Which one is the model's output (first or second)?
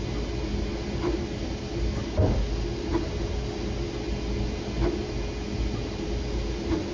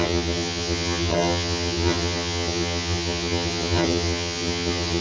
second